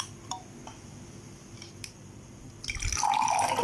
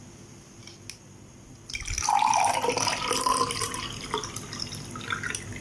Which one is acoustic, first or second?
second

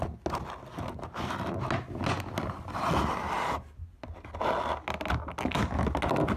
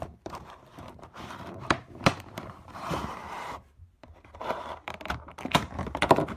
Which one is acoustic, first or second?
first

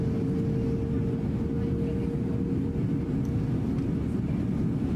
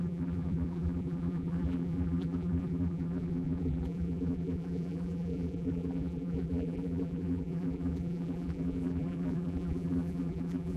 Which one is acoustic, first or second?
first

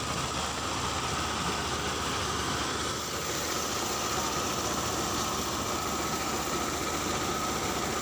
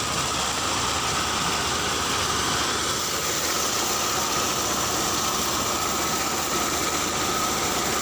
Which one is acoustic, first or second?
first